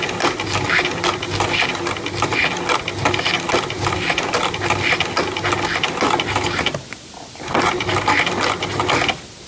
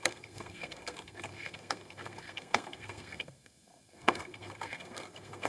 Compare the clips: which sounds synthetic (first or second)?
second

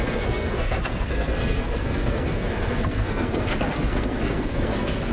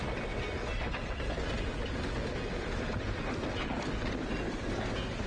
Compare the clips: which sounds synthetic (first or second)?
first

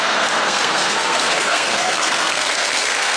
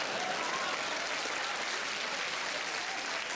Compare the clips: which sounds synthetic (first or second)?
first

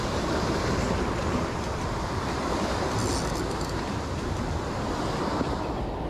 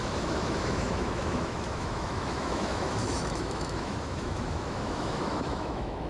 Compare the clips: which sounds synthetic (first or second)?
second